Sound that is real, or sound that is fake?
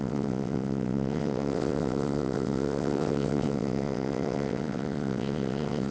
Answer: fake